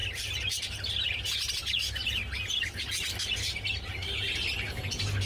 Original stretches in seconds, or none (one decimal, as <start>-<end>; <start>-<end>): 0.0-5.3